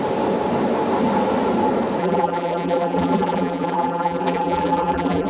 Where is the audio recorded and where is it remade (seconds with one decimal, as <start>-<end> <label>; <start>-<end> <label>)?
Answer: 0.0-2.0 recorded; 2.0-5.3 remade